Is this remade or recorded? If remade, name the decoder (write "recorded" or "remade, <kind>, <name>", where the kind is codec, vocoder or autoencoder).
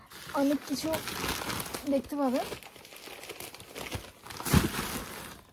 recorded